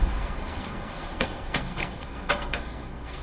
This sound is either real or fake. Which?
fake